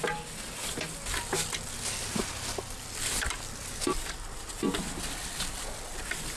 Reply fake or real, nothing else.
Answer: real